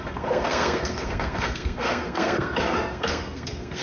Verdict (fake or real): fake